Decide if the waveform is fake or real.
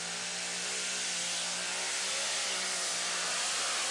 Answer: real